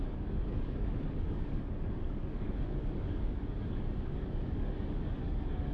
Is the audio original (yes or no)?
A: no